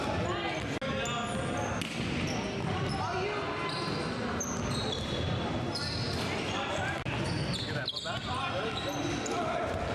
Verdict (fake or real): real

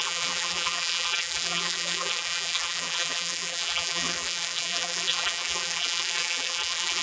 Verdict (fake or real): fake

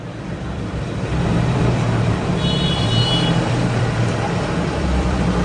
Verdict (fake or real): fake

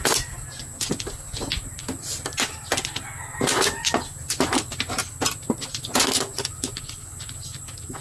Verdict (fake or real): real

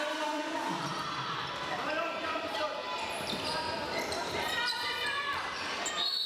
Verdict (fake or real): fake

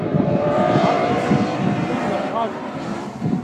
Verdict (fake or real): fake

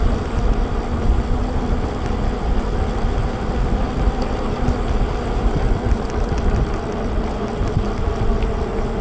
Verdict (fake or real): real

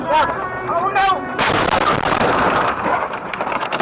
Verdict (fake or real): fake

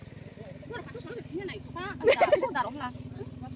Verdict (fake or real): real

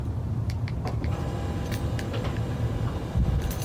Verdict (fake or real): fake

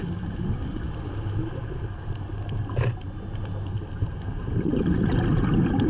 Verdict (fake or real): real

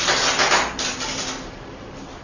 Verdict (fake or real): real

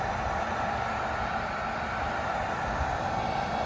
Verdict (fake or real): fake